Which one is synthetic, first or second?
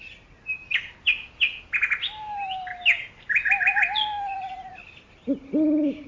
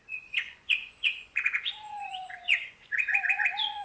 second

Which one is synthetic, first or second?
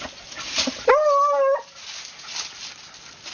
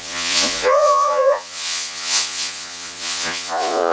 second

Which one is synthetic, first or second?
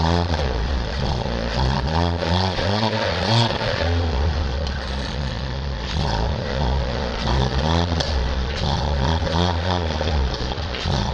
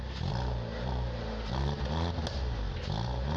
first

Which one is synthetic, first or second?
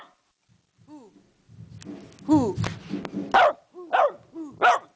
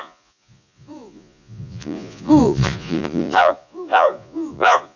second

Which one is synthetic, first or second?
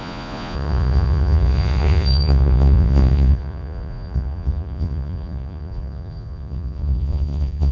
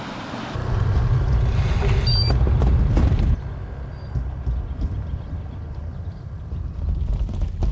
first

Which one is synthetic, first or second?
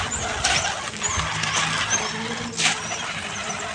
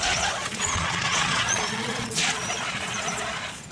second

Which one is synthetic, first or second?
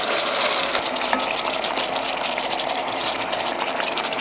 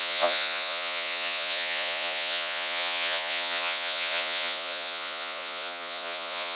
second